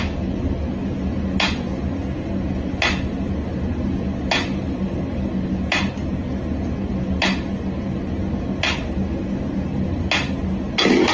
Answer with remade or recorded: recorded